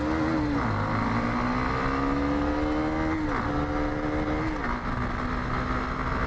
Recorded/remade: recorded